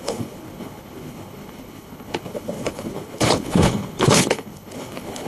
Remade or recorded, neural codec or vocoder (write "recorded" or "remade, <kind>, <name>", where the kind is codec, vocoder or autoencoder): remade, codec, HILCodec